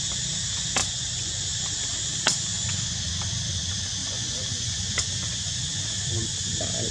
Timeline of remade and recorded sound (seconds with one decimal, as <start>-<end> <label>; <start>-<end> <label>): 0.0-0.8 recorded; 0.8-1.4 remade; 1.4-2.5 recorded; 2.5-3.1 remade; 3.1-4.0 recorded; 4.0-5.6 remade; 5.6-6.9 recorded